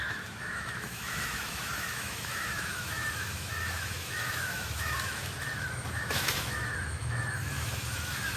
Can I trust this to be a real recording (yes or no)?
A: no